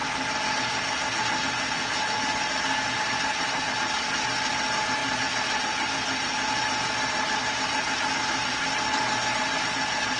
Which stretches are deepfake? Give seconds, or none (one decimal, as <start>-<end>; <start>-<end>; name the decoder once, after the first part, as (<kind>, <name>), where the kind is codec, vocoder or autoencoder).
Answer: none